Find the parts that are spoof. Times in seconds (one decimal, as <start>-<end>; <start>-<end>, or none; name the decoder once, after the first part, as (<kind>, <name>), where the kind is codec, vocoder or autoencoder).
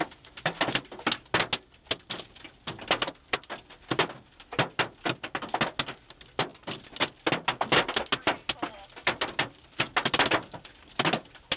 none